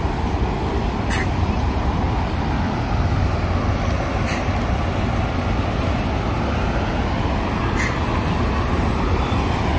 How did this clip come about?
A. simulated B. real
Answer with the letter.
B